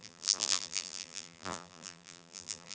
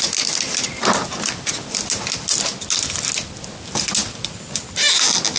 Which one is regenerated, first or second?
first